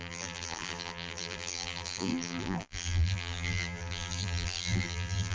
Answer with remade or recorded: remade